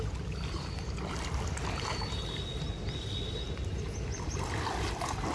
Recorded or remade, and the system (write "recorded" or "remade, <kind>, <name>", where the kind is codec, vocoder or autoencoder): recorded